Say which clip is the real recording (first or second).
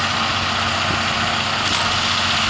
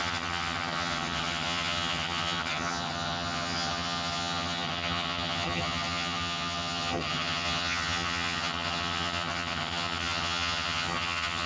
first